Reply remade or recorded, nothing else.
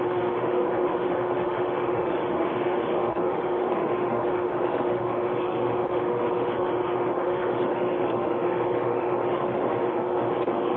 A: remade